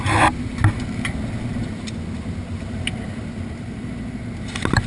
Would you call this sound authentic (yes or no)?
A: yes